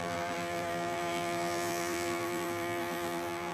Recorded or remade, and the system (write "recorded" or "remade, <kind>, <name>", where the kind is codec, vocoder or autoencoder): remade, vocoder, BigVGAN v2